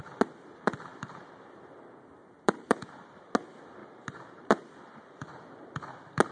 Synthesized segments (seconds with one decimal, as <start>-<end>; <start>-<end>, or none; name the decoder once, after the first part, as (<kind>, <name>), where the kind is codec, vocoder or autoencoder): 0.9-1.7 (vocoder, BigVGAN v2); 2.2-2.9; 3.8-5.1